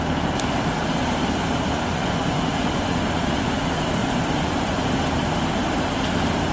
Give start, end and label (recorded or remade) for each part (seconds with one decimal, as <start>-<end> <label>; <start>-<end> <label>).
0.0-1.7 recorded; 1.7-3.4 remade; 3.4-4.0 recorded; 4.0-4.8 remade; 4.8-6.5 recorded

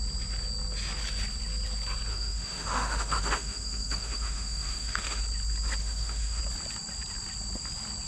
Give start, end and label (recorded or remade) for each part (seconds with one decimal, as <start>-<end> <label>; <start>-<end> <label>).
0.0-2.1 recorded; 2.1-5.2 remade; 5.2-5.8 recorded; 5.8-6.4 remade; 6.4-8.1 recorded

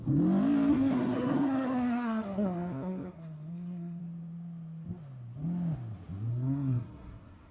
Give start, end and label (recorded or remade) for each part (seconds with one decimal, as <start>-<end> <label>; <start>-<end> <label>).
0.0-0.7 recorded; 0.7-4.0 remade; 4.0-6.3 recorded; 6.3-7.5 remade

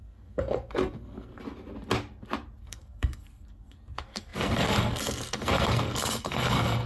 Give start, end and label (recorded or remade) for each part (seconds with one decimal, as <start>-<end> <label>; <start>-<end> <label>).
0.0-1.3 remade; 1.3-2.6 recorded; 2.6-6.9 remade